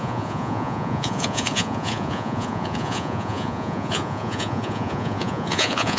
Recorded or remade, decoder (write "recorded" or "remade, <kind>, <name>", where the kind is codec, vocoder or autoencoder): remade, vocoder, Vocos